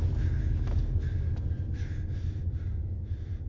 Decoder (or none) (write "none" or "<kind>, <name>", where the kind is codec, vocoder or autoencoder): none